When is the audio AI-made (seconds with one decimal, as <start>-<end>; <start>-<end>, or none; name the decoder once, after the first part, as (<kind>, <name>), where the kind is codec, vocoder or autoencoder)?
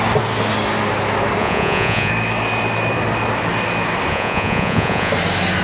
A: 1.4-2.1 (vocoder, Vocos); 4.1-5.1